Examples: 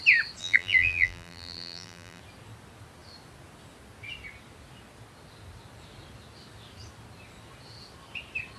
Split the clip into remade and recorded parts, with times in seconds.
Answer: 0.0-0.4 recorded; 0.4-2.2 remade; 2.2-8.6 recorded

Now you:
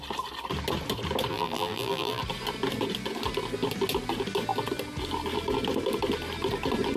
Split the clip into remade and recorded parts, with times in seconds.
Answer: 0.0-1.3 recorded; 1.3-2.2 remade; 2.2-7.0 recorded

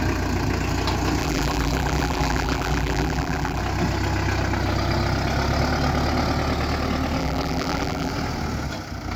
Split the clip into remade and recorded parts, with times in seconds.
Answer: 0.0-1.2 recorded; 1.2-3.6 remade; 3.6-7.2 recorded; 7.2-8.1 remade; 8.1-9.2 recorded

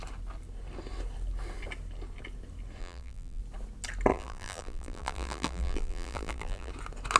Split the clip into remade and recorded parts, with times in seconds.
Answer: 0.0-2.8 recorded; 2.8-3.4 remade; 3.4-4.1 recorded; 4.1-6.7 remade; 6.7-7.2 recorded

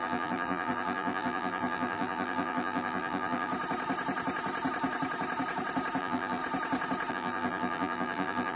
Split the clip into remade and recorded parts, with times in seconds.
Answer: 0.0-3.5 remade; 3.5-6.0 recorded; 6.0-6.4 remade; 6.4-7.1 recorded; 7.1-8.6 remade

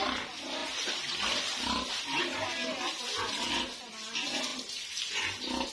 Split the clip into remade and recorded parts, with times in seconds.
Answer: 0.0-0.6 recorded; 0.6-2.2 remade; 2.2-5.7 recorded

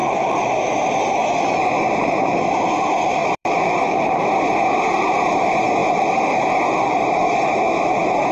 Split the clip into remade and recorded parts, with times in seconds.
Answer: 0.0-0.7 remade; 0.7-3.2 recorded; 3.2-4.0 remade; 4.0-5.8 recorded; 5.8-7.2 remade; 7.2-8.3 recorded

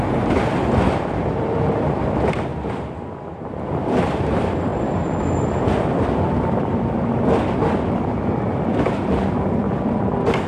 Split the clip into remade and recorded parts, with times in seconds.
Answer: 0.0-2.5 remade; 2.5-3.3 recorded; 3.3-4.7 remade; 4.7-8.5 recorded; 8.5-10.5 remade